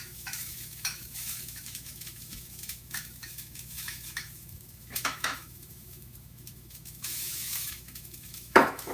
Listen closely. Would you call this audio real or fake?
fake